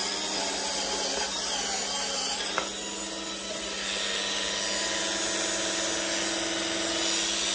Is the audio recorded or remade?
recorded